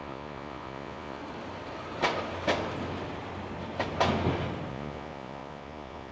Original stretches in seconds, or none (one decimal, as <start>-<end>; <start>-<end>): 1.2-4.7